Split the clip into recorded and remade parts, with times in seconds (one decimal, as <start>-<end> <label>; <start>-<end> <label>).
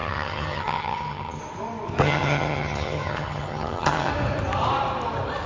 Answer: 0.0-1.4 remade; 1.4-2.0 recorded; 2.0-4.1 remade; 4.1-5.5 recorded